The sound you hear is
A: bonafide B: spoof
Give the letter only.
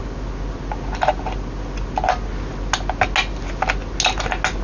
A